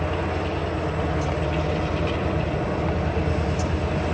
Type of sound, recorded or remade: recorded